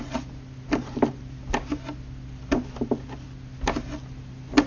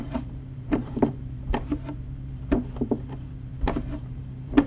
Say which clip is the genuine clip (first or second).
first